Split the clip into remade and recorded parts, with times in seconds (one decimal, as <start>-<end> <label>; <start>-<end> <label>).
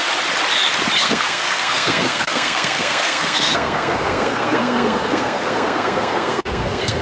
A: 0.0-1.0 recorded; 1.0-7.0 remade